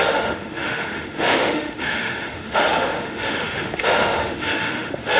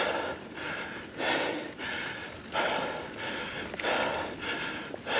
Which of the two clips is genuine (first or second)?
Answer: second